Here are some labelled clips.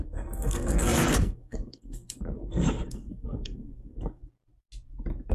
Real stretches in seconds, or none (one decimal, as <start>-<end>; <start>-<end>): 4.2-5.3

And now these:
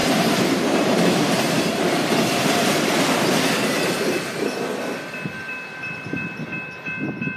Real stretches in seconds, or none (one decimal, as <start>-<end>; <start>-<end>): 2.7-7.4

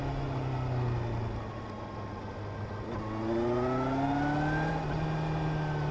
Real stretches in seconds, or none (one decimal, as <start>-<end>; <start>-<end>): 0.0-5.9